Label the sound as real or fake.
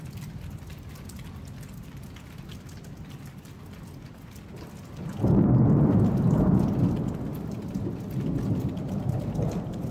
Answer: real